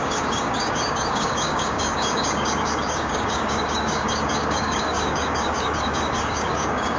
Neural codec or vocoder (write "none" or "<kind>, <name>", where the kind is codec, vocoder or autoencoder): codec, DAC